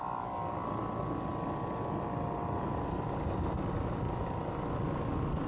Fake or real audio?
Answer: real